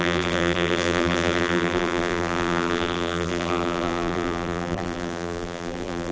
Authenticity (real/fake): fake